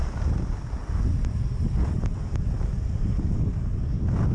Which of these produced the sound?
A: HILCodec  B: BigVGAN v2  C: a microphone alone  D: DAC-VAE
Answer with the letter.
C